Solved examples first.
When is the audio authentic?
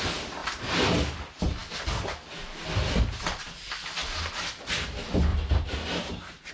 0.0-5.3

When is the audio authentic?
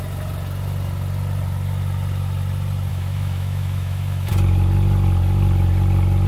0.0-2.9; 4.3-6.3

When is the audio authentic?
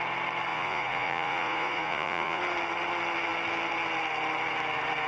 0.0-0.5; 2.4-5.1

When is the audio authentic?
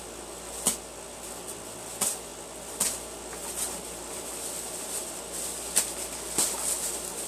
0.0-7.3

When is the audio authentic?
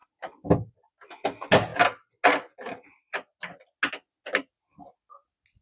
0.0-5.6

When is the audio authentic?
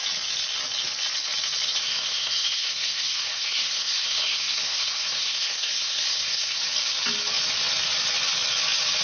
0.0-1.8; 6.6-9.0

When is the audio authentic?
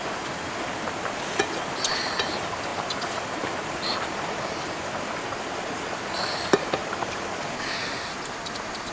0.0-6.8